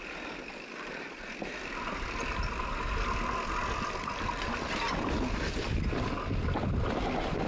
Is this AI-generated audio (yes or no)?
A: no